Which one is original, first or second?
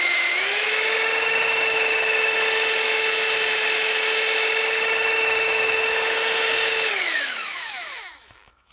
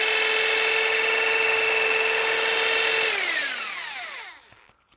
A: second